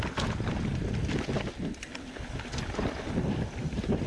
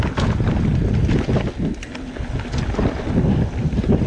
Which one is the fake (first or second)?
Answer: first